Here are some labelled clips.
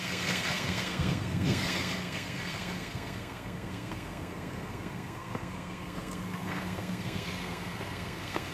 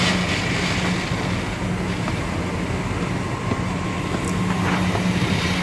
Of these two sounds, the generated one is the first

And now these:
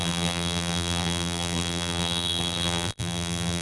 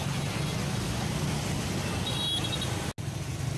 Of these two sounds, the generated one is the first